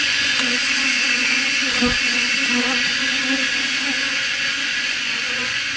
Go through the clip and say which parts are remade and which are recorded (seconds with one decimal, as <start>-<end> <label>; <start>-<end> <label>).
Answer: 0.0-3.2 remade; 3.2-4.1 recorded; 4.1-5.8 remade

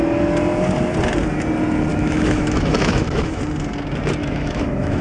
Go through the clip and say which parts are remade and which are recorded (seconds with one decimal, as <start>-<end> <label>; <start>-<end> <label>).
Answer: 0.0-1.9 recorded; 1.9-3.4 remade; 3.4-4.2 recorded; 4.2-5.0 remade

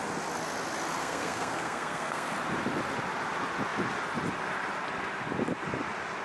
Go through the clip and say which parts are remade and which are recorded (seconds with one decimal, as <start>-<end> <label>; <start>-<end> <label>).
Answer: 0.0-1.0 recorded; 1.0-2.3 remade; 2.3-6.2 recorded

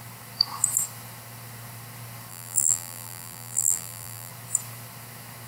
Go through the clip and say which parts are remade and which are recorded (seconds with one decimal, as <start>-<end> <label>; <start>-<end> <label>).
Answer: 0.0-2.3 recorded; 2.3-4.3 remade; 4.3-5.5 recorded